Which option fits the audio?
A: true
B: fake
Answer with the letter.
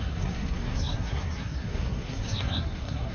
B